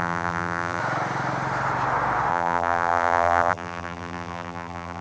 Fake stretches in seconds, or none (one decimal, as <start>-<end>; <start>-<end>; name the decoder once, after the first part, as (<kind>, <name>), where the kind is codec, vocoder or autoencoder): 0.0-0.8 (vocoder, BigVGAN v2); 2.3-5.0